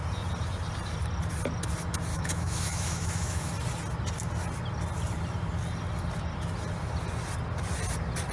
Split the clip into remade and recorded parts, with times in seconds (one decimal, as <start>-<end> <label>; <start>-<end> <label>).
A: 0.0-2.1 recorded; 2.1-3.5 remade; 3.5-8.3 recorded

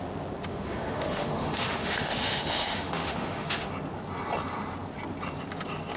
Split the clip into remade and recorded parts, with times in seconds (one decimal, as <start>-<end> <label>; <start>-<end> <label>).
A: 0.0-0.5 recorded; 0.5-3.7 remade; 3.7-6.0 recorded

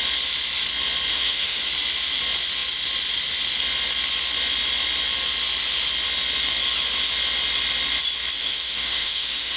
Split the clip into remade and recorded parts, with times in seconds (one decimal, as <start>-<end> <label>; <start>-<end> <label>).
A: 0.0-1.1 recorded; 1.1-1.6 remade; 1.6-8.4 recorded; 8.4-9.6 remade

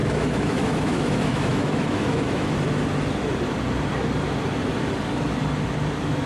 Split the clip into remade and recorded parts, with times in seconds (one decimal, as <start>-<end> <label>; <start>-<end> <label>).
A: 0.0-2.5 remade; 2.5-6.3 recorded

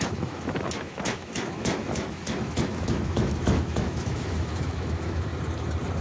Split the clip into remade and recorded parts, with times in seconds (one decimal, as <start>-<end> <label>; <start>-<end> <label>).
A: 0.0-5.3 remade; 5.3-6.0 recorded